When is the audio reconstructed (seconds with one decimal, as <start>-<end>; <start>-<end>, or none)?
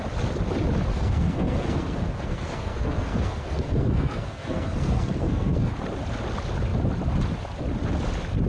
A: 0.9-5.7